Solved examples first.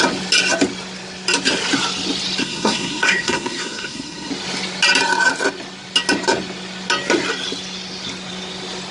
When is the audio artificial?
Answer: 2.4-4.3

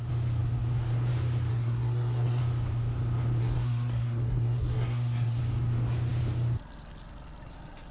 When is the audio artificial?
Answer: 1.5-2.4; 3.4-5.4

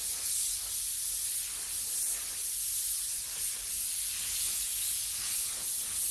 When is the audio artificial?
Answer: 0.0-0.5; 4.2-6.1

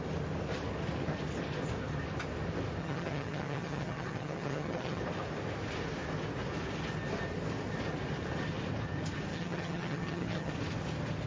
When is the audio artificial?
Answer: 2.8-5.0; 9.3-10.5